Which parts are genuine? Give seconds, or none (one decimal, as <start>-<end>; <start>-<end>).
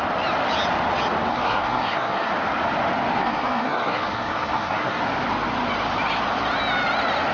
0.0-1.3; 2.3-3.2; 5.0-7.3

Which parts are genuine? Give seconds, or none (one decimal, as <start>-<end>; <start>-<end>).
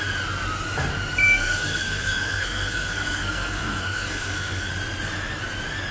0.0-1.2; 4.7-5.9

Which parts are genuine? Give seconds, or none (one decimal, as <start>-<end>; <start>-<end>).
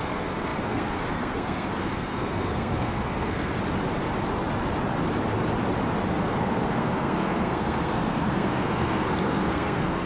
3.6-6.4